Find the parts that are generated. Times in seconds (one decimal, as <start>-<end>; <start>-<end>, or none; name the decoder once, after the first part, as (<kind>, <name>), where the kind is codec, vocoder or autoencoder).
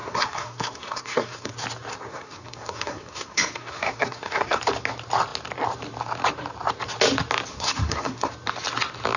0.0-1.5 (codec, SNAC); 1.9-4.6; 7.5-8.3